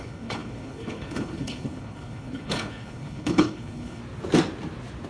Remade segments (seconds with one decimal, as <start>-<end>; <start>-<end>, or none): 0.0-4.0